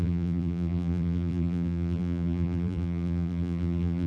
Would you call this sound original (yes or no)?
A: no